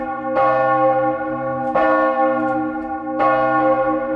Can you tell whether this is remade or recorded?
recorded